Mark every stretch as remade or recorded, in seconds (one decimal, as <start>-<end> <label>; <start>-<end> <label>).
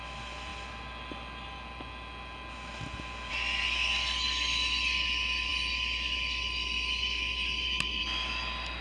0.0-8.8 recorded